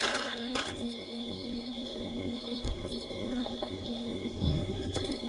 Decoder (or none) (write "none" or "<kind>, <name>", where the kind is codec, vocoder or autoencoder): codec, SNAC